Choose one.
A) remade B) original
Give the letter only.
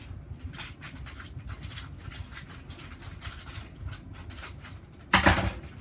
B